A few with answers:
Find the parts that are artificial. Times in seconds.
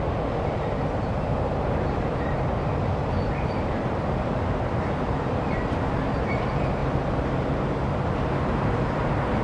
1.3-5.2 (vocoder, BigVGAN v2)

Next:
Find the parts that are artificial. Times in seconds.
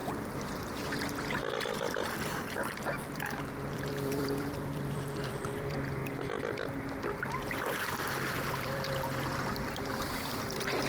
1.5-6.0 (vocoder, BigVGAN v2); 8.3-10.9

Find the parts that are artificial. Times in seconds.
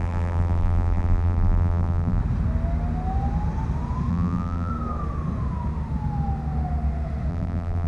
0.0-2.2 (vocoder, BigVGAN v2); 4.1-4.7; 7.3-7.9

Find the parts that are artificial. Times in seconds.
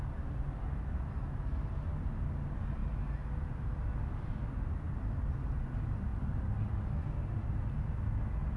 none